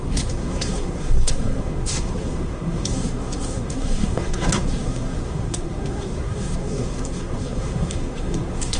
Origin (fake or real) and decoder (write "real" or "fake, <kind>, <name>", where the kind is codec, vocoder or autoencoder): fake, codec, SNAC